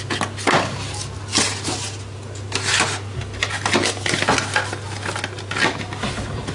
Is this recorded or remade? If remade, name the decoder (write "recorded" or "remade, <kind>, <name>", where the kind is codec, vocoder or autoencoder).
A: recorded